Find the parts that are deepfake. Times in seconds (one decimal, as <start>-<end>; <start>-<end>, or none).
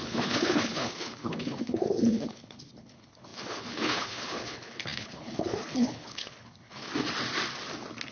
0.0-6.9